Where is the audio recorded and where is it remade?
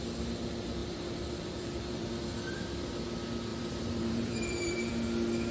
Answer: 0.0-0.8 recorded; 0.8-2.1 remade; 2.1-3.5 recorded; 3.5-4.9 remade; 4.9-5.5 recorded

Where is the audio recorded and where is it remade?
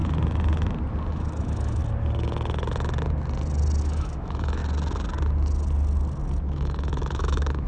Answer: 0.0-1.1 recorded; 1.1-1.8 remade; 1.8-3.8 recorded; 3.8-4.6 remade; 4.6-6.4 recorded; 6.4-7.7 remade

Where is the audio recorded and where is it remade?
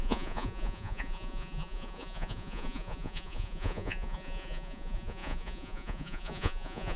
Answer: 0.0-7.0 remade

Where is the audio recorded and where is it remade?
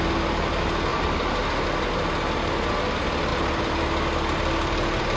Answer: 0.0-0.9 recorded; 0.9-1.4 remade; 1.4-3.3 recorded; 3.3-5.2 remade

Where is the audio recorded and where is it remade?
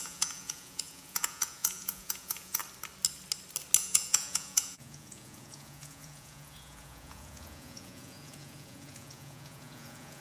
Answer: 0.0-2.6 remade; 2.6-3.8 recorded; 3.8-10.2 remade